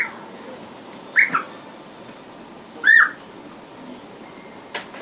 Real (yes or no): yes